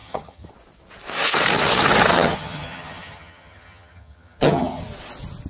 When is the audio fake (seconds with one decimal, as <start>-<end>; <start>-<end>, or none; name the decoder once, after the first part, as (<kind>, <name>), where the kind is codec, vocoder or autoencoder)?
0.0-0.5 (vocoder, HiFi-GAN); 2.1-4.8